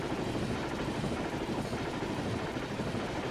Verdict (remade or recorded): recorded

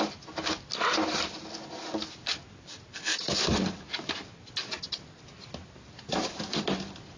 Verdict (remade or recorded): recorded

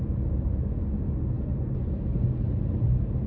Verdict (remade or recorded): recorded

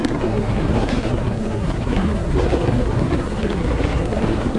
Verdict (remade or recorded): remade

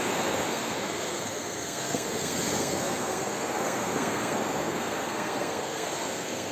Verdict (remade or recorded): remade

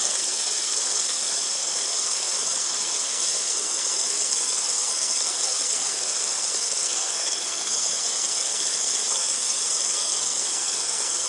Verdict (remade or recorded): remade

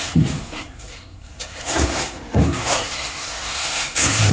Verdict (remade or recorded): remade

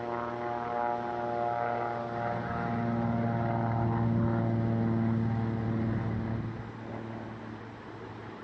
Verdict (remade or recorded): recorded